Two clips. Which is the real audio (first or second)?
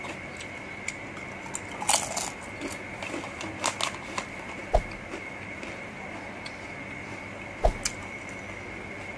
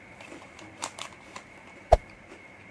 first